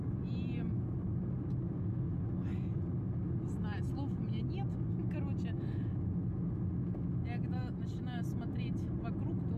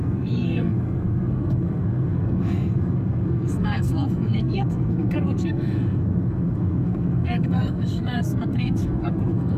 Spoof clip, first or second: second